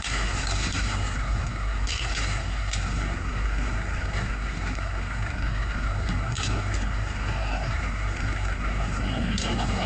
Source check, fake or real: fake